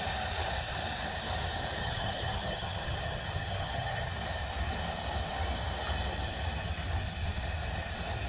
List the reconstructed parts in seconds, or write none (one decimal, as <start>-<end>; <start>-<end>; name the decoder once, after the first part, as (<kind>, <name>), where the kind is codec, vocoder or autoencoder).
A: 1.8-4.1 (vocoder, HiFi-GAN)